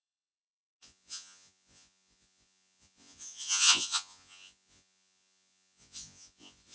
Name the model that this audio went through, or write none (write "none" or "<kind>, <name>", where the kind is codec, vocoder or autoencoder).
vocoder, Vocos